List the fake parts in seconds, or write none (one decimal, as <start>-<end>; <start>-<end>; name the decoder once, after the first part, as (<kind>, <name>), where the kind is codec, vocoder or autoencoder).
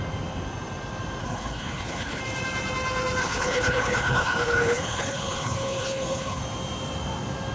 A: 1.2-2.2 (codec, HILCodec); 3.2-6.4